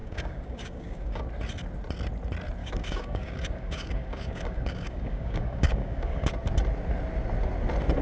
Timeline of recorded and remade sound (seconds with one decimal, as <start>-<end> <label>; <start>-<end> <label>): 0.0-1.3 remade; 1.3-2.6 recorded; 2.6-6.3 remade; 6.3-8.0 recorded